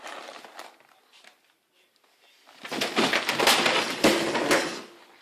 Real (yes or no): yes